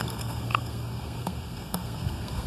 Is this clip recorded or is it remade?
remade